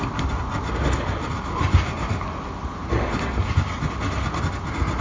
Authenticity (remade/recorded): recorded